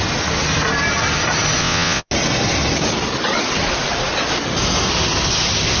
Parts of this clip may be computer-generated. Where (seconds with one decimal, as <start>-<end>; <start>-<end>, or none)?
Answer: 1.6-2.1

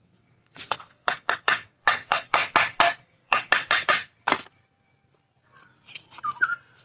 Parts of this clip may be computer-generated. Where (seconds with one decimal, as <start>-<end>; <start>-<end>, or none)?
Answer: 0.0-2.4; 3.0-4.0

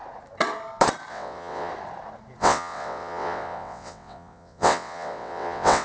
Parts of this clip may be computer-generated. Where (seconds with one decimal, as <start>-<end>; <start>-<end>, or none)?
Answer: 1.1-1.7; 2.4-5.8